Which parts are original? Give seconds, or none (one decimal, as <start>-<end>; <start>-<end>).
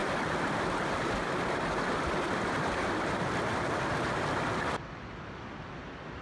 0.0-6.2